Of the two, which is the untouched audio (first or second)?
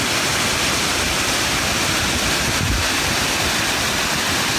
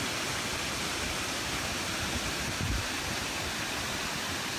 first